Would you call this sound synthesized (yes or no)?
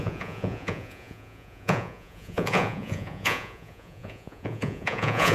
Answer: yes